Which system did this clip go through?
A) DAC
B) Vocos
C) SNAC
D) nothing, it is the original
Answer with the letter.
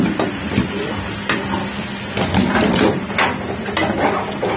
D